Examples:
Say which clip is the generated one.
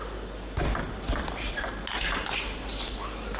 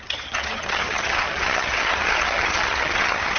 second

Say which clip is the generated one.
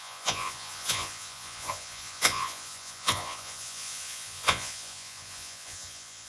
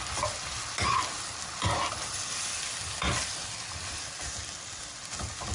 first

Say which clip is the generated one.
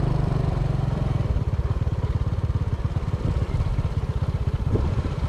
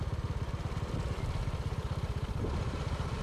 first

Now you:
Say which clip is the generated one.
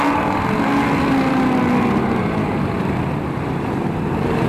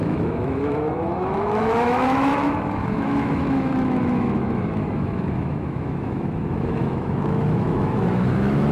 second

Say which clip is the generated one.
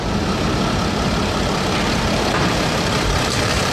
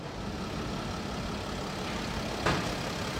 first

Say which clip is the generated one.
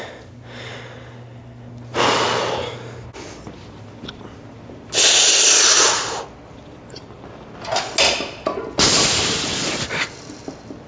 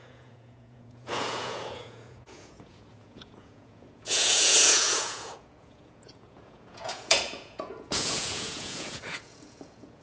second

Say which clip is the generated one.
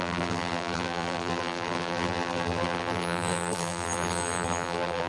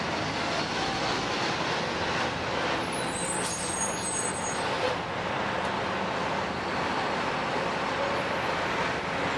first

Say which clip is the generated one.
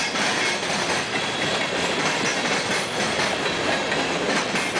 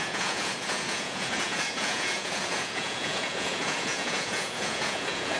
second